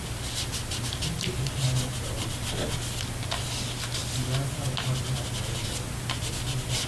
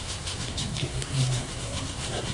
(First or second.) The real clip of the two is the first